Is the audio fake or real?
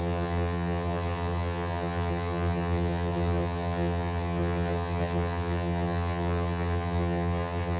fake